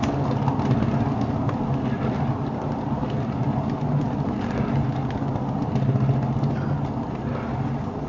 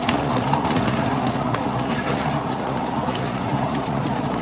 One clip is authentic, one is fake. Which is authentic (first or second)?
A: first